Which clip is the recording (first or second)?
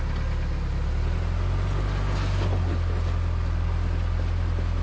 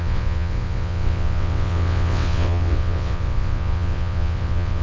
first